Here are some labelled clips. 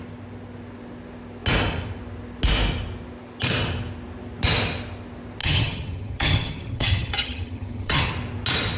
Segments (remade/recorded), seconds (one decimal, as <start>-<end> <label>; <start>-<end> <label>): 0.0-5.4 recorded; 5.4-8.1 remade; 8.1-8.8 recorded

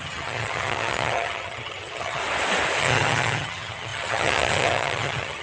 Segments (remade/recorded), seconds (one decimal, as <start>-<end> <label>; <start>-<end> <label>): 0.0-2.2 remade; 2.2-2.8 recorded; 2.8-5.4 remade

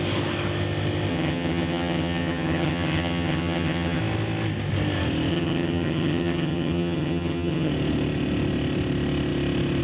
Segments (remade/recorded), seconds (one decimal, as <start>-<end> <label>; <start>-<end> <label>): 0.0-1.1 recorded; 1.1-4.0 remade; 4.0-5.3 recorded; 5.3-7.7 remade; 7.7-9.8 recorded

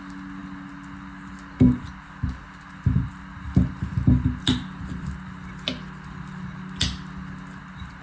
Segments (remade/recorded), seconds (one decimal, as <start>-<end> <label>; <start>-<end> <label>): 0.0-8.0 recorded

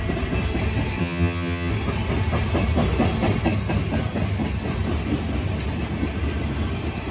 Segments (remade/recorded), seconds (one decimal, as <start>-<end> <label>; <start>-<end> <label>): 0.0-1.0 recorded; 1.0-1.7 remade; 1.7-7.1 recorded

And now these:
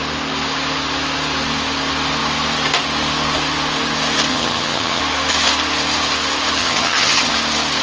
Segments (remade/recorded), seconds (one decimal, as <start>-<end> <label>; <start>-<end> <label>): 0.0-4.3 recorded; 4.3-5.0 remade; 5.0-6.6 recorded; 6.6-7.3 remade; 7.3-7.8 recorded

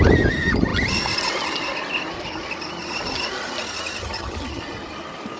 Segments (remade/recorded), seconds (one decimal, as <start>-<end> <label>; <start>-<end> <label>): 0.0-4.0 recorded; 4.0-4.6 remade; 4.6-5.4 recorded